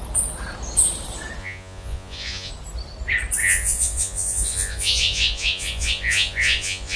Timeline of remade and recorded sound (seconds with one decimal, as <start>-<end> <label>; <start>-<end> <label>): 0.0-1.4 recorded; 1.4-2.5 remade; 2.5-3.4 recorded; 3.4-7.0 remade